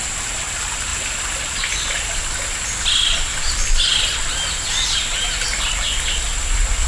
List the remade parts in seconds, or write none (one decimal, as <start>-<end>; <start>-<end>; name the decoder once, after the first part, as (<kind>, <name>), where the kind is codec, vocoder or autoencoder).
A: none